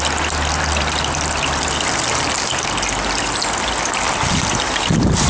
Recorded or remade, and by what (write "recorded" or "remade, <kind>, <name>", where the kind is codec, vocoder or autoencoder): recorded